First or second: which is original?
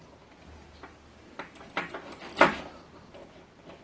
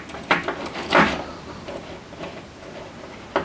second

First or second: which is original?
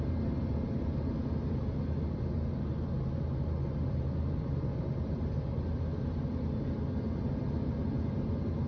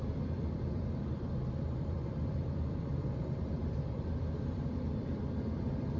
first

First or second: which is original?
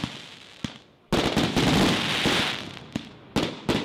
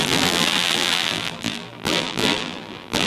first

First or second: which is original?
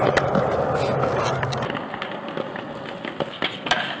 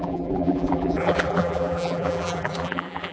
first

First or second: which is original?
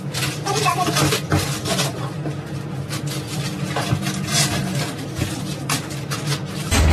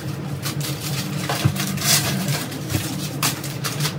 first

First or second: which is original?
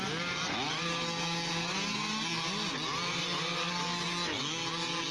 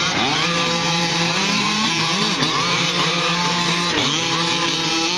first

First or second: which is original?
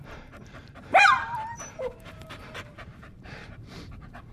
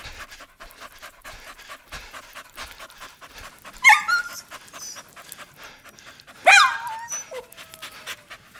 second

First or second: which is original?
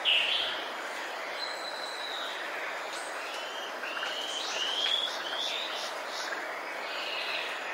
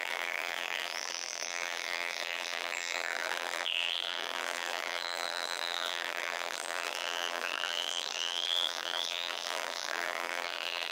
first